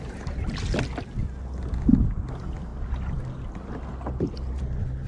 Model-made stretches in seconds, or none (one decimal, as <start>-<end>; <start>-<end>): none